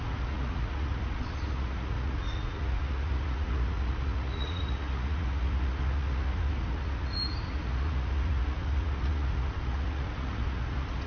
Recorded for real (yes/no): no